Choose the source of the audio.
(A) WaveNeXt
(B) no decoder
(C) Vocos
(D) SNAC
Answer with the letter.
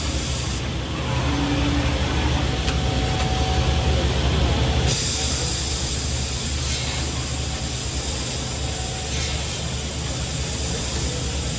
B